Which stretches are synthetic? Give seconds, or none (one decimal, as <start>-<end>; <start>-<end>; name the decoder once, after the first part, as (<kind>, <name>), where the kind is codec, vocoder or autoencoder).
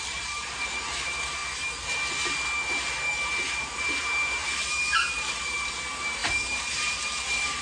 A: 0.0-1.4 (vocoder, BigVGAN v2); 3.5-7.6